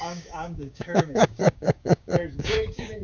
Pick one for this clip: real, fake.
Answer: fake